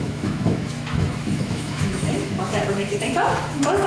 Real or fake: fake